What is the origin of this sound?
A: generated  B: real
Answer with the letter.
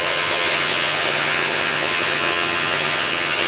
A